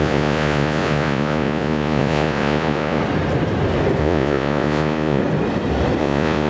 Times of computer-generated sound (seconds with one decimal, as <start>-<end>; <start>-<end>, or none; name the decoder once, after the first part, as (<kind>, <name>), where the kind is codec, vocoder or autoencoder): 0.0-3.0 (vocoder, Vocos); 4.0-5.2; 6.0-6.5